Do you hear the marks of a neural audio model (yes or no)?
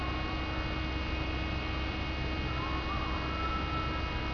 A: no